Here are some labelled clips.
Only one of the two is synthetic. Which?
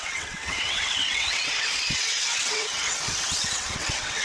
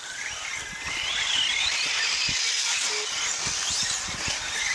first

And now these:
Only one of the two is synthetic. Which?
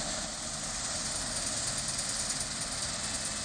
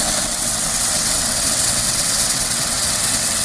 second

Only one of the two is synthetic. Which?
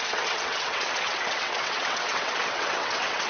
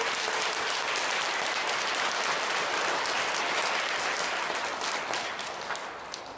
first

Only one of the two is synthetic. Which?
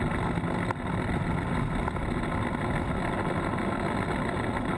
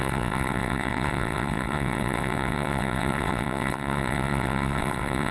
second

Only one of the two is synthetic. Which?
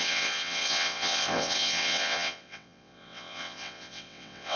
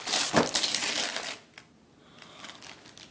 first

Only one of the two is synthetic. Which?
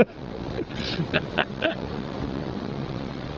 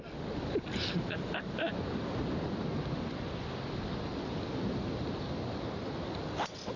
first